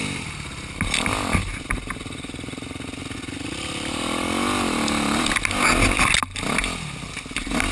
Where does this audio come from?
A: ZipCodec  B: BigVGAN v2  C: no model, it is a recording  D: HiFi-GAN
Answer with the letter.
C